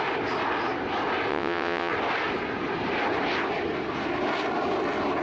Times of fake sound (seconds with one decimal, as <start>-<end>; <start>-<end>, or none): 1.3-1.9